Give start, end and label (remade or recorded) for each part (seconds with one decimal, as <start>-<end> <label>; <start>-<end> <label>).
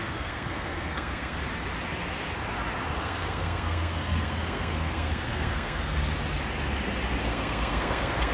0.0-1.4 remade; 1.4-3.0 recorded; 3.0-6.0 remade; 6.0-7.2 recorded; 7.2-8.3 remade